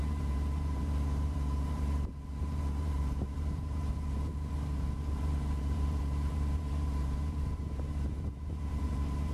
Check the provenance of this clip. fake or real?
fake